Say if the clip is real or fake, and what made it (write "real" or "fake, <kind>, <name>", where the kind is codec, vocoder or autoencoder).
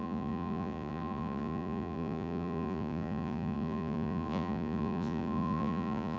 fake, vocoder, Vocos